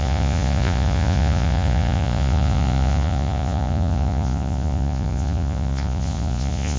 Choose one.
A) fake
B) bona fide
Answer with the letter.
A